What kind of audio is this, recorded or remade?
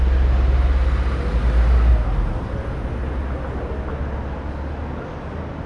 recorded